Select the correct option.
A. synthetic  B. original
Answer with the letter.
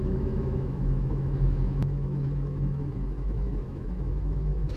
A